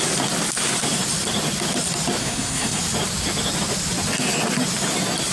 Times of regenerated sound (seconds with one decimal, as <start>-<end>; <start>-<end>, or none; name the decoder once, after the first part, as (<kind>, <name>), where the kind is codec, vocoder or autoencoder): 2.2-2.8 (codec, SNAC)